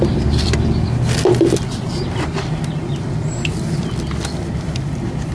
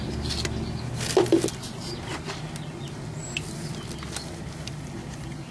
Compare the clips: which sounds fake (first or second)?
first